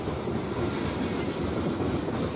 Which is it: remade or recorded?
recorded